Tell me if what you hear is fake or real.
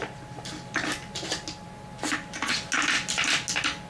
real